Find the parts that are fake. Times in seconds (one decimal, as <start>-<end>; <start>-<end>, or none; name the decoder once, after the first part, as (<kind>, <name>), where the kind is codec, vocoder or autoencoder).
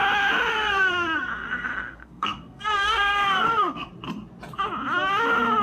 0.5-3.9 (codec, SNAC)